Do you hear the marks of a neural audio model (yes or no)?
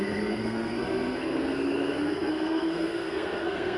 yes